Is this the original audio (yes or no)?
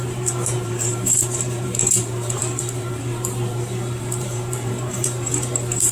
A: no